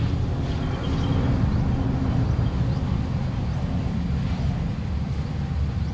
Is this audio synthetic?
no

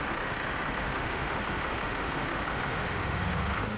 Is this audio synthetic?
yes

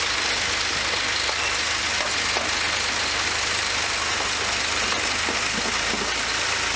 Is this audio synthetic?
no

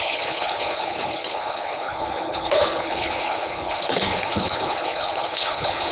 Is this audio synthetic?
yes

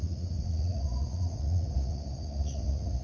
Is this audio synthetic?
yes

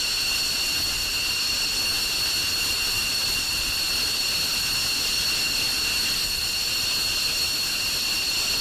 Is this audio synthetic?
no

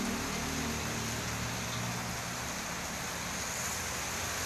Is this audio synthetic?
no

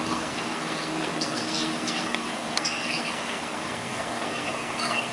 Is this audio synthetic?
yes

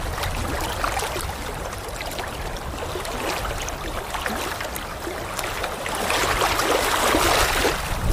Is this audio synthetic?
no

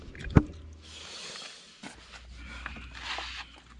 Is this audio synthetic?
no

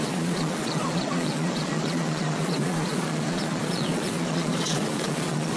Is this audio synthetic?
yes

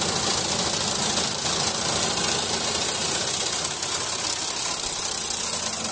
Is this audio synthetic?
no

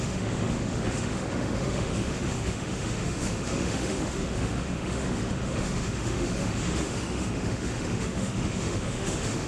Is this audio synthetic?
yes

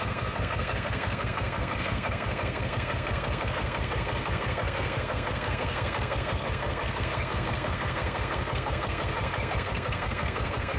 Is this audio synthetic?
yes